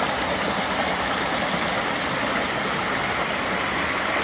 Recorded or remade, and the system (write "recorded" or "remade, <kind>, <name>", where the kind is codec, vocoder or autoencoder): recorded